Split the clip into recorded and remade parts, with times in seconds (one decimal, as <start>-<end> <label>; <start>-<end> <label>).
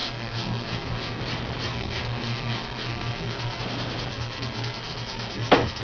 0.0-1.2 remade; 1.2-1.7 recorded; 1.7-3.6 remade; 3.6-4.1 recorded; 4.1-5.8 remade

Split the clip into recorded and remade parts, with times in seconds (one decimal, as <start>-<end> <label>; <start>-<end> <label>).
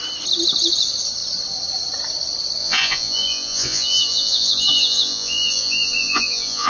0.0-2.6 recorded; 2.6-6.7 remade